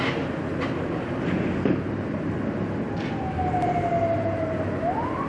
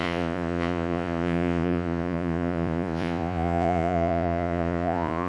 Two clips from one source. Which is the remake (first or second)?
second